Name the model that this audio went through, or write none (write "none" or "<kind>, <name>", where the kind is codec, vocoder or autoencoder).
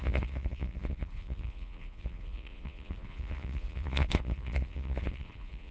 vocoder, Vocos